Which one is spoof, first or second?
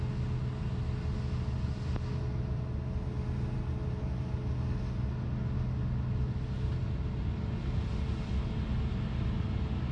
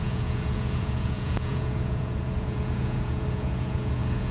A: second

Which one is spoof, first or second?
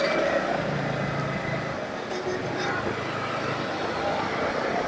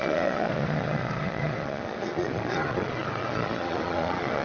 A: second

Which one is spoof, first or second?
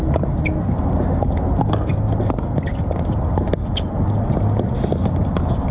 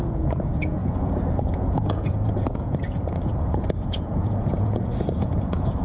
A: second